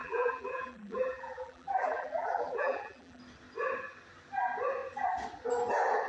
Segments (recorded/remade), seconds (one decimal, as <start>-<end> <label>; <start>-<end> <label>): 0.0-3.2 remade; 3.2-6.1 recorded

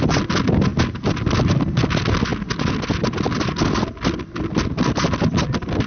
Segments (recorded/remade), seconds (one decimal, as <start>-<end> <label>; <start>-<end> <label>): 0.0-5.9 recorded

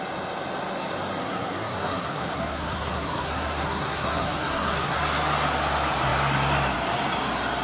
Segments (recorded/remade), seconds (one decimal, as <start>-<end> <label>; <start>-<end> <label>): 0.0-1.2 recorded; 1.2-5.0 remade; 5.0-7.6 recorded

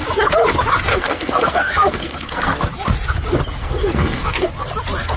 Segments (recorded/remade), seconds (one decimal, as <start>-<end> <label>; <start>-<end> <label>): 0.0-0.9 recorded; 0.9-2.7 remade; 2.7-3.6 recorded; 3.6-4.5 remade; 4.5-5.2 recorded

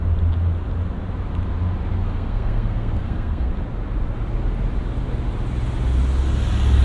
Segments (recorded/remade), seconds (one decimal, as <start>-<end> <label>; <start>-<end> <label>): 0.0-2.0 recorded; 2.0-3.5 remade; 3.5-6.8 recorded